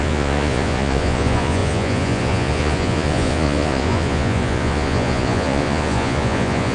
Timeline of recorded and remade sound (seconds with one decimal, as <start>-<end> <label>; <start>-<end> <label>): 0.0-6.7 remade

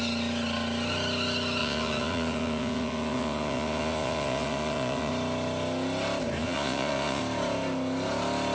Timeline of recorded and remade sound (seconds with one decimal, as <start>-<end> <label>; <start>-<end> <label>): 0.0-1.6 recorded; 1.6-5.1 remade; 5.1-6.4 recorded; 6.4-7.2 remade; 7.2-8.5 recorded

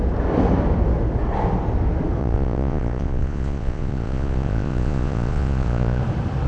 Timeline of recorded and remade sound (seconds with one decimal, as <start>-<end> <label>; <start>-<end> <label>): 0.0-2.2 recorded; 2.2-6.0 remade; 6.0-6.5 recorded

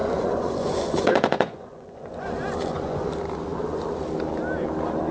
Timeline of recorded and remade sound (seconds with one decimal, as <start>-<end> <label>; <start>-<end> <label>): 0.0-3.1 remade; 3.1-5.1 recorded

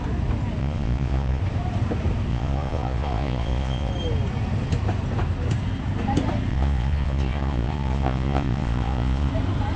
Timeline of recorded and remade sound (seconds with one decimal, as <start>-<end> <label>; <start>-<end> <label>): 0.0-0.6 recorded; 0.6-1.4 remade; 1.4-2.3 recorded; 2.3-3.9 remade; 3.9-6.5 recorded; 6.5-9.3 remade; 9.3-9.8 recorded

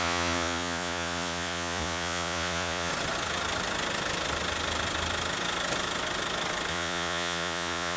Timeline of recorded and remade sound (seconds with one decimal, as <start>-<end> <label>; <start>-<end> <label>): 0.0-2.9 remade; 2.9-6.7 recorded; 6.7-8.0 remade

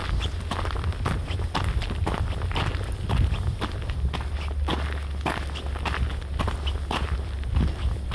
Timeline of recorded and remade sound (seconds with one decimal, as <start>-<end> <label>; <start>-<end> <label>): 0.0-8.1 recorded

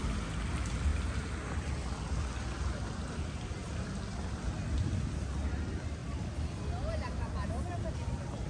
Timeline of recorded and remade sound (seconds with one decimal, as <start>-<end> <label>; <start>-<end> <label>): 0.0-8.5 recorded